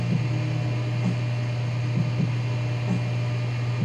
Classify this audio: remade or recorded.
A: recorded